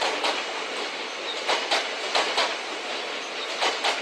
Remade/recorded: recorded